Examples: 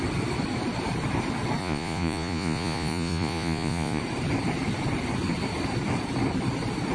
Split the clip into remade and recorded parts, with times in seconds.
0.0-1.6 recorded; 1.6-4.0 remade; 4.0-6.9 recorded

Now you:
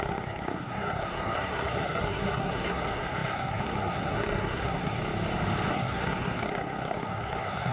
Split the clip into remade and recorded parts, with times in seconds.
0.0-5.0 remade; 5.0-5.7 recorded; 5.7-7.7 remade